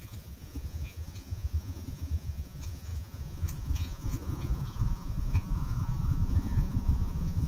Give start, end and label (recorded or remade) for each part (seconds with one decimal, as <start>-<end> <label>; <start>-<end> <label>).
0.0-7.5 remade